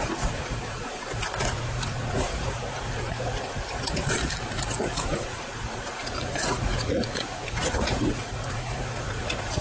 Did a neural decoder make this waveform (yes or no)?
yes